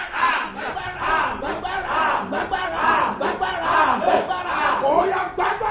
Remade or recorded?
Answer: remade